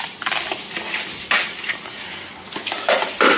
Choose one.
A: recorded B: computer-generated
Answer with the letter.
A